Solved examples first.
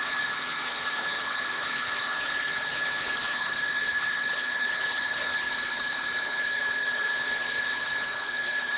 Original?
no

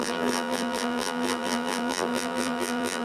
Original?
no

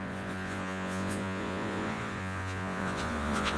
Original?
no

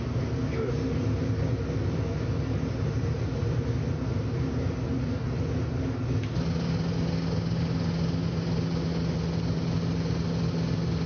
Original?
yes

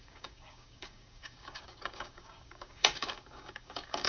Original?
no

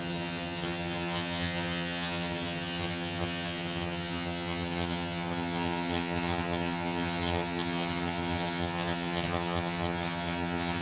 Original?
no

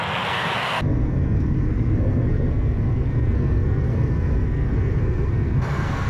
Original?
no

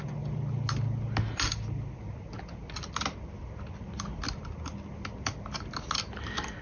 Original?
yes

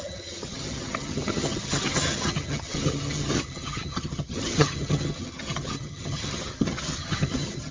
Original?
no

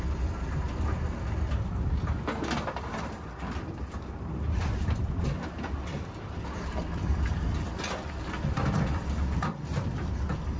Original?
yes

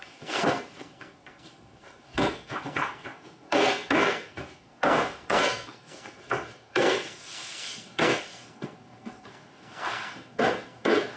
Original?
no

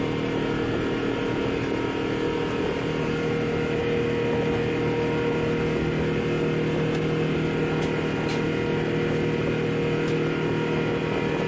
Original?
yes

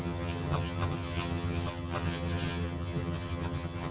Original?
no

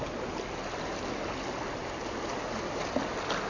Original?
yes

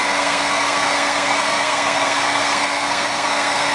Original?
no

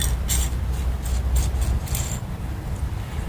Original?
yes